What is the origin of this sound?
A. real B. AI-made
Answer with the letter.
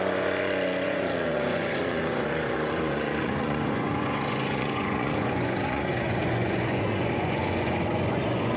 B